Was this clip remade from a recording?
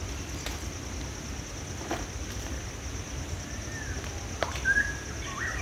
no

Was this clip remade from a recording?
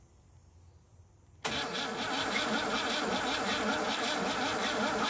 yes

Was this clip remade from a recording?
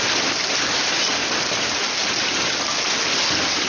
no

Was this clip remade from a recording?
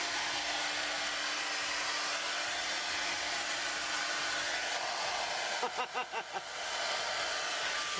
no